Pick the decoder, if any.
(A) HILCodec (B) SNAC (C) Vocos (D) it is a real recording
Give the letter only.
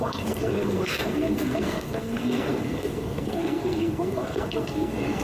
B